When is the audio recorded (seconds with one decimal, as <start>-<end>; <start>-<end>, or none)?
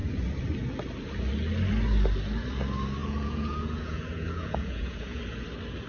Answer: 0.0-3.0; 5.2-5.9